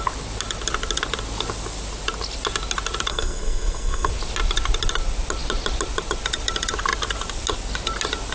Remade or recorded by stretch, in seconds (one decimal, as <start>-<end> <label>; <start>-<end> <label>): 0.0-3.1 recorded; 3.1-4.1 remade; 4.1-8.3 recorded